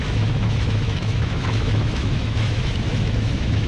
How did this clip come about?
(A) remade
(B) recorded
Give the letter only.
A